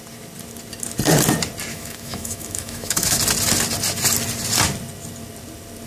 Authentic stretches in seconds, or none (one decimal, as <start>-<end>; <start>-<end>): 0.0-1.7; 3.2-5.9